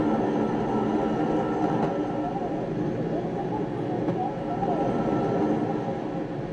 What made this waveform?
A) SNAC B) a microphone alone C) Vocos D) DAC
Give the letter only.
B